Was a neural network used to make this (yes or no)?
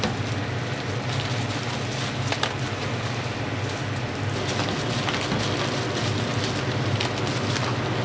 no